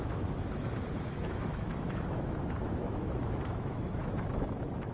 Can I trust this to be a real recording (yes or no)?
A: no